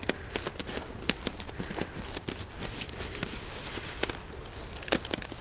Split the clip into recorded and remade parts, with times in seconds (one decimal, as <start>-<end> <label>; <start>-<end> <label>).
0.0-5.4 recorded

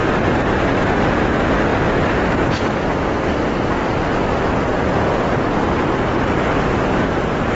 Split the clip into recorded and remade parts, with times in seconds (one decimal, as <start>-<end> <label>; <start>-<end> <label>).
0.0-0.7 remade; 0.7-4.7 recorded; 4.7-5.6 remade; 5.6-7.5 recorded

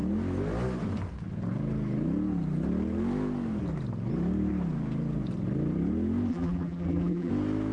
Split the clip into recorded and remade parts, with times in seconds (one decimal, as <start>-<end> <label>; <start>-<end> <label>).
0.0-6.3 recorded; 6.3-7.3 remade; 7.3-7.7 recorded

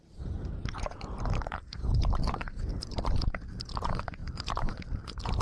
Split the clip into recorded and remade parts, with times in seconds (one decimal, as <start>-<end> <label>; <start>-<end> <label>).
0.0-3.2 remade; 3.2-4.2 recorded; 4.2-4.8 remade; 4.8-5.4 recorded